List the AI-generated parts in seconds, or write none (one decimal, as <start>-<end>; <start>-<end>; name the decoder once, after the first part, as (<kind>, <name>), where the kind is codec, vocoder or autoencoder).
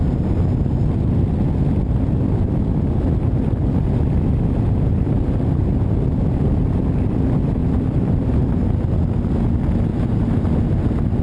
7.6-8.4 (vocoder, BigVGAN v2)